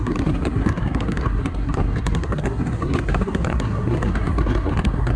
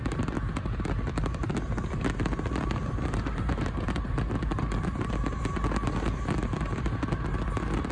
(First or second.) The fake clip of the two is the first